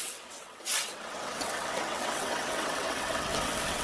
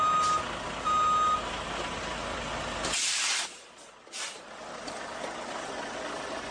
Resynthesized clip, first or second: first